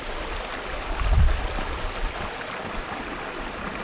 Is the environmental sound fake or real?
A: real